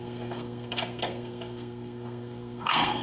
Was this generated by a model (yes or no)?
yes